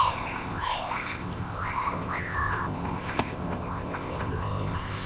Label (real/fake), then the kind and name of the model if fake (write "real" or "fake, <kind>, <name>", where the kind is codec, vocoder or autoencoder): fake, codec, ZipCodec